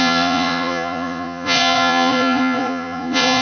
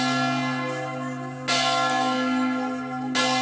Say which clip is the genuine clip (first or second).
second